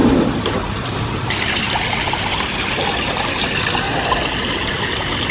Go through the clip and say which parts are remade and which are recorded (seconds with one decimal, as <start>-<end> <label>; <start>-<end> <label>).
0.0-5.3 recorded